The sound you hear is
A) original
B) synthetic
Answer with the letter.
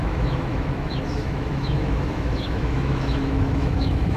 B